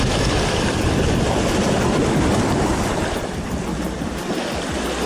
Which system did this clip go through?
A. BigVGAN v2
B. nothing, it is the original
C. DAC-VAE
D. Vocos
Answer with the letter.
B